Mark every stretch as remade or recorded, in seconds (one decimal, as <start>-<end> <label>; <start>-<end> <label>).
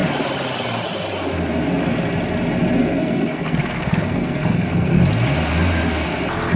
0.0-2.8 recorded; 2.8-5.0 remade; 5.0-6.6 recorded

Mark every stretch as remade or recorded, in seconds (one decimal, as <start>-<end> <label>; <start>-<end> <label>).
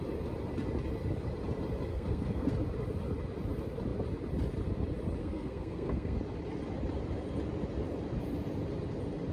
0.0-1.9 recorded; 1.9-2.5 remade; 2.5-5.2 recorded; 5.2-6.2 remade; 6.2-9.3 recorded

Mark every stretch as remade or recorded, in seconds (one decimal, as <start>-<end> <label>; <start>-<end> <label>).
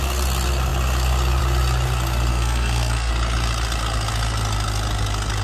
0.0-2.3 recorded; 2.3-3.1 remade; 3.1-5.4 recorded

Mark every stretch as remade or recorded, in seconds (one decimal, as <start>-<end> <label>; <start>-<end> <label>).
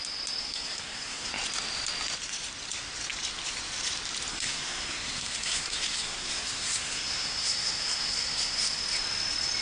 0.0-0.4 recorded; 0.4-1.3 remade; 1.3-4.3 recorded; 4.3-8.8 remade; 8.8-9.6 recorded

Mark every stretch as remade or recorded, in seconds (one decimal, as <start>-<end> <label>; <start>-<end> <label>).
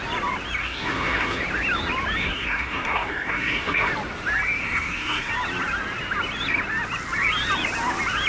0.0-0.6 recorded; 0.6-1.4 remade; 1.4-2.2 recorded; 2.2-3.9 remade; 3.9-4.6 recorded; 4.6-5.3 remade; 5.3-8.3 recorded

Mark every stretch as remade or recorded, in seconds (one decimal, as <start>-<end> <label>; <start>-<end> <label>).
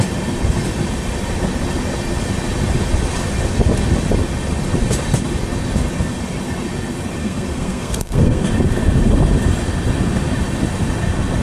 0.0-7.2 recorded; 7.2-8.5 remade; 8.5-11.4 recorded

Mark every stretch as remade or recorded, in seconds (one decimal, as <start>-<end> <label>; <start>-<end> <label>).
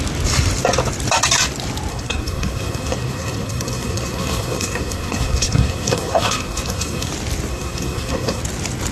0.0-1.9 recorded; 1.9-7.1 remade; 7.1-7.5 recorded; 7.5-8.4 remade; 8.4-8.9 recorded